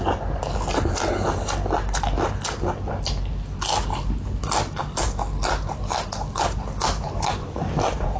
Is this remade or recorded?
recorded